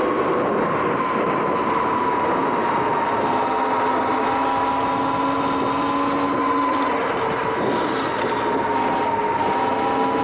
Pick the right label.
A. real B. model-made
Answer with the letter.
A